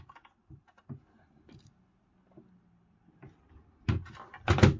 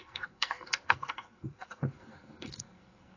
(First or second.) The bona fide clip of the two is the first